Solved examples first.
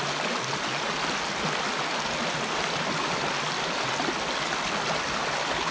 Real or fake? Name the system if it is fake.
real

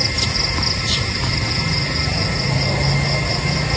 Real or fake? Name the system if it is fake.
real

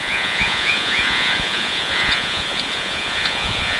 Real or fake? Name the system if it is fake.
fake, vocoder, Vocos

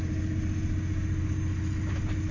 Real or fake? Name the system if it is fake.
real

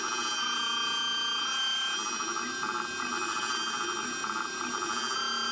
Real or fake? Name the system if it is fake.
real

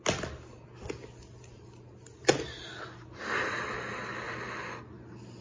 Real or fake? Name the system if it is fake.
real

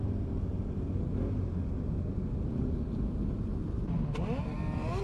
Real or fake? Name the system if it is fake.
real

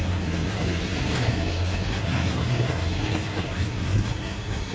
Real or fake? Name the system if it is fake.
fake, codec, SNAC